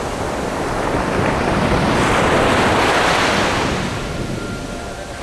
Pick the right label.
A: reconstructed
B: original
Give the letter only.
B